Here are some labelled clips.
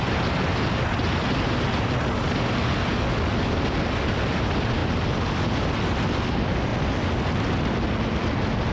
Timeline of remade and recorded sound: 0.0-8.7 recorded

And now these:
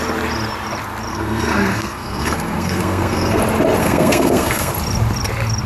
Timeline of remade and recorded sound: 0.0-1.1 recorded; 1.1-3.4 remade; 3.4-3.8 recorded; 3.8-4.7 remade; 4.7-5.7 recorded

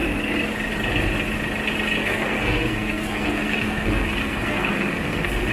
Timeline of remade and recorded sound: 0.0-2.0 recorded; 2.0-5.5 remade

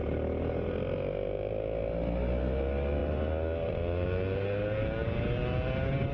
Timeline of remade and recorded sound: 0.0-6.1 recorded

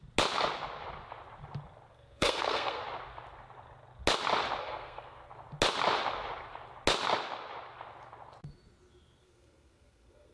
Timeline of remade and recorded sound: 0.0-1.9 recorded; 1.9-2.8 remade; 2.8-4.6 recorded; 4.6-5.3 remade; 5.3-9.2 recorded; 9.2-10.3 remade

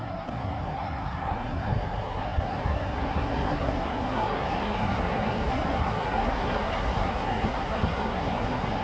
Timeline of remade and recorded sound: 0.0-8.8 remade